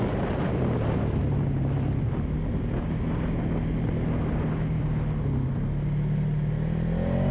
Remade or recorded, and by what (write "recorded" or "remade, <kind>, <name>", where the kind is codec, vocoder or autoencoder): recorded